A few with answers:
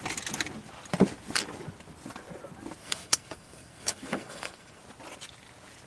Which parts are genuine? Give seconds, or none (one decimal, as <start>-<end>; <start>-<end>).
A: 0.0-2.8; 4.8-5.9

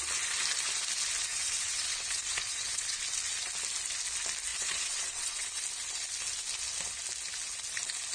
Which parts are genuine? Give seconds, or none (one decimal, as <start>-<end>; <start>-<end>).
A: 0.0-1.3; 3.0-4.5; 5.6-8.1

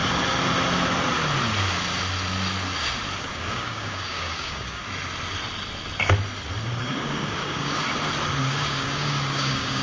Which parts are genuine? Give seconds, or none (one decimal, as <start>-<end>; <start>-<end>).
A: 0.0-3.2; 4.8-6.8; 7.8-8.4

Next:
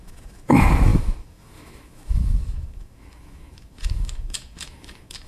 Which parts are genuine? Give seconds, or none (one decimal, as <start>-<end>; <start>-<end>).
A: none

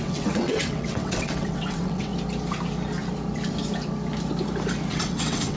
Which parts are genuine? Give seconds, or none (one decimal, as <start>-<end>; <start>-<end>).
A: 2.1-4.9

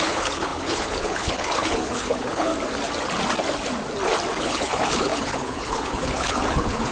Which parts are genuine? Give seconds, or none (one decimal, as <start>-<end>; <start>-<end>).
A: 2.5-4.4